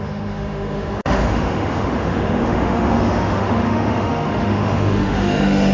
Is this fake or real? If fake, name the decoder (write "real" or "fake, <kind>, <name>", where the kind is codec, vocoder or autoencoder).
fake, autoencoder, DAC-VAE